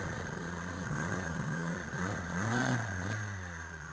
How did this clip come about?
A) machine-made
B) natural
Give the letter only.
A